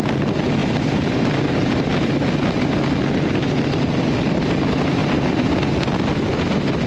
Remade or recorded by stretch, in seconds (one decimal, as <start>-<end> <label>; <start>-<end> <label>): 0.0-0.6 recorded; 0.6-2.1 remade; 2.1-5.0 recorded; 5.0-5.5 remade; 5.5-6.9 recorded